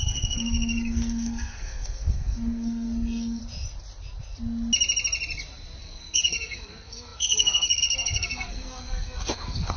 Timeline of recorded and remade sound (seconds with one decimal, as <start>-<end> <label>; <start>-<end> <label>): 0.0-3.4 remade; 3.4-5.8 recorded; 5.8-9.8 remade